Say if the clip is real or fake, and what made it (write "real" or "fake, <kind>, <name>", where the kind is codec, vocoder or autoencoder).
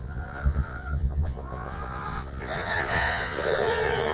fake, vocoder, Vocos